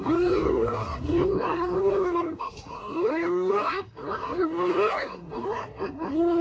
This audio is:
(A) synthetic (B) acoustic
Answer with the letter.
A